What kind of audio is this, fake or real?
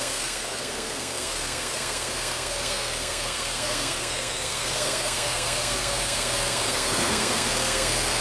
fake